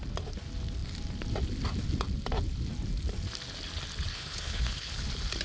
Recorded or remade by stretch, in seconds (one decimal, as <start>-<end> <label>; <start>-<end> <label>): 0.0-4.1 recorded; 4.1-4.9 remade; 4.9-5.4 recorded